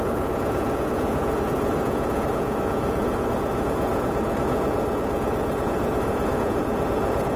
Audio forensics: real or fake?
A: fake